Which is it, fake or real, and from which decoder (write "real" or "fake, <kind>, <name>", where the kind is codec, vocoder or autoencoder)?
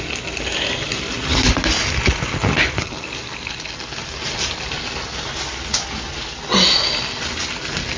real